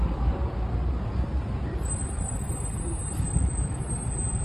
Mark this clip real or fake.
real